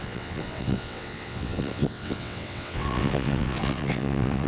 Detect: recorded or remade remade